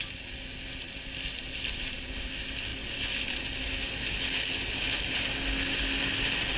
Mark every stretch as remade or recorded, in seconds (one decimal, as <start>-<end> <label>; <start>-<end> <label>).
0.0-6.6 recorded

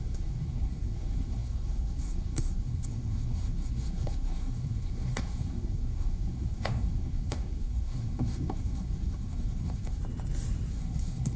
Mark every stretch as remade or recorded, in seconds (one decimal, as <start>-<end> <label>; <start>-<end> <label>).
0.0-10.0 remade; 10.0-10.7 recorded; 10.7-11.4 remade

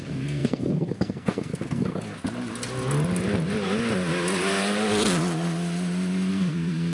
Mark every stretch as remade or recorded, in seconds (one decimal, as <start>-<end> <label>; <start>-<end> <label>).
0.0-2.2 remade; 2.2-6.3 recorded; 6.3-6.9 remade

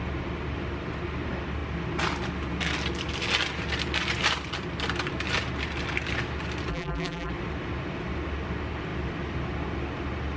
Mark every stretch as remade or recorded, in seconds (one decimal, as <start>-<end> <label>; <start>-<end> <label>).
0.0-6.7 recorded; 6.7-7.3 remade; 7.3-10.4 recorded

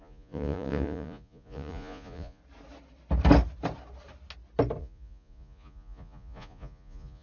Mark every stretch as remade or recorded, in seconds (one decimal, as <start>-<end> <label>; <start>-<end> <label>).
0.0-2.4 remade; 2.4-4.8 recorded; 4.8-7.2 remade

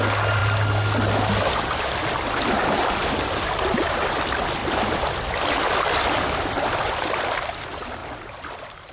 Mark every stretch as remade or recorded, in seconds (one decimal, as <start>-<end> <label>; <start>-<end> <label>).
0.0-8.9 recorded

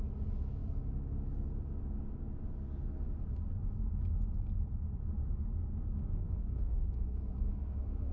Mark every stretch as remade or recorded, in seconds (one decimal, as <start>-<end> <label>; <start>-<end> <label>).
0.0-6.2 recorded; 6.2-8.1 remade